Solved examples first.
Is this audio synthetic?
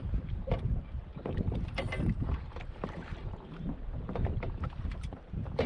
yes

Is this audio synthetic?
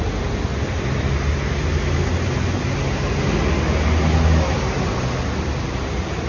no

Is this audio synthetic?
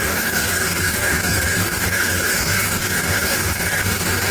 yes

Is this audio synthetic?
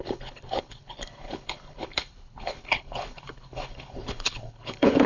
yes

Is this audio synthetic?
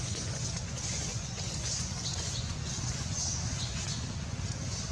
yes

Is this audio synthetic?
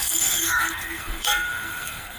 yes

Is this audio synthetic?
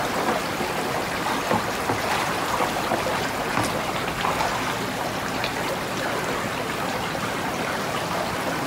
no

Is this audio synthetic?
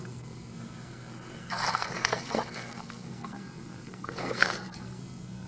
yes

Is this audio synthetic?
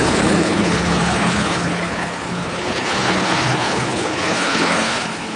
yes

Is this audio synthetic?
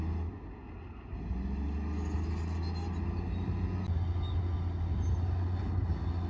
no